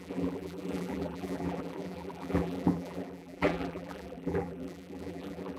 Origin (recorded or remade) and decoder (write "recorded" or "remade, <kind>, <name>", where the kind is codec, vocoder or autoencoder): remade, vocoder, BigVGAN v2